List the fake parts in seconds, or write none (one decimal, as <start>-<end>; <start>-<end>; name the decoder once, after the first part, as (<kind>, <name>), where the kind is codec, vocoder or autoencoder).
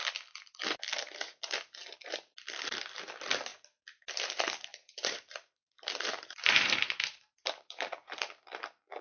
4.7-8.5 (vocoder, BigVGAN v2)